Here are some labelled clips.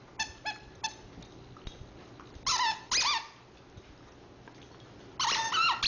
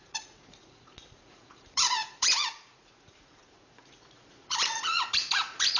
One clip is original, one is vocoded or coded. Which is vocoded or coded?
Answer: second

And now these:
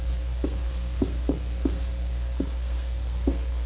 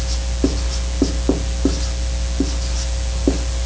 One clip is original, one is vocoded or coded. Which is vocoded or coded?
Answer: first